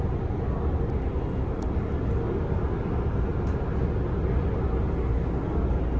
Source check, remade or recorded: recorded